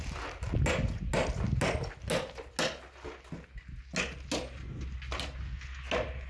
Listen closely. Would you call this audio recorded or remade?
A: recorded